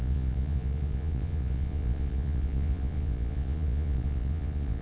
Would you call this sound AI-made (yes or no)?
yes